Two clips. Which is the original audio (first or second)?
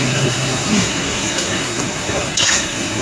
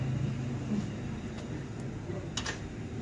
second